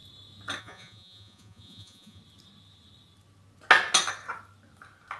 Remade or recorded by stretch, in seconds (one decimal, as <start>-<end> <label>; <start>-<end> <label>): 0.0-0.6 recorded; 0.6-2.2 remade; 2.2-5.2 recorded